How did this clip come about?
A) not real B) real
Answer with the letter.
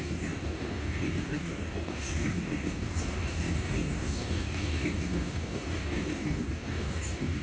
A